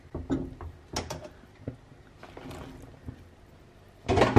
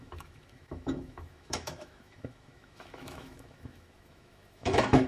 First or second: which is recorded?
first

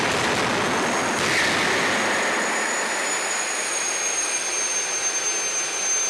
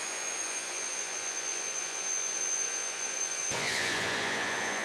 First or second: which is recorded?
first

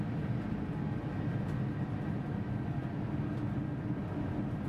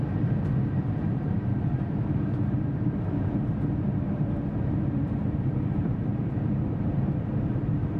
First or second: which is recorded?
first